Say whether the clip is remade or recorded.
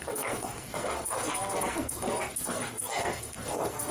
remade